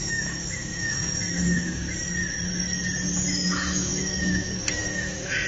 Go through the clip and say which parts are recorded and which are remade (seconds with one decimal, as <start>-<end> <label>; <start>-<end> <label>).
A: 0.0-1.8 remade; 1.8-3.3 recorded; 3.3-5.5 remade